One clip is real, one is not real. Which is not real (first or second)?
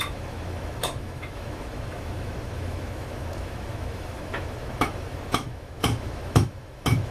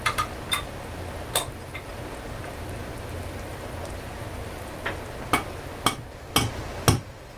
first